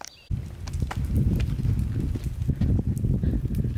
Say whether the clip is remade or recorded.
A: recorded